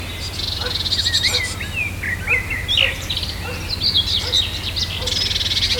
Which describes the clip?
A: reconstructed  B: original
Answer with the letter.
B